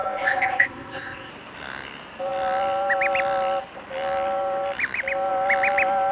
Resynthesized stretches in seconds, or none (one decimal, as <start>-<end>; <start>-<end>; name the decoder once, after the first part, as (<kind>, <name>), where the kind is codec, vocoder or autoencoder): 0.0-1.3 (codec, ZipCodec)